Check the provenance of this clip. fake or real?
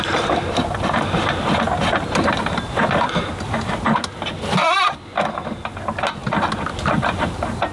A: real